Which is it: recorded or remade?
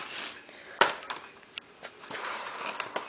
recorded